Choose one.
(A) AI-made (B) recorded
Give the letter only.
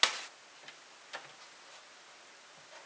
B